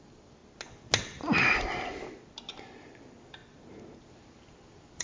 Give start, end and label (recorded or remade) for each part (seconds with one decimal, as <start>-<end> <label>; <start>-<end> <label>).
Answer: 0.0-0.4 remade; 0.4-2.8 recorded; 2.8-3.4 remade; 3.4-4.0 recorded; 4.0-5.0 remade